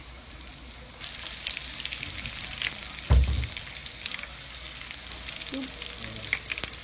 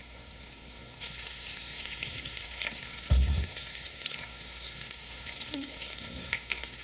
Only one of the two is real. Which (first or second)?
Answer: first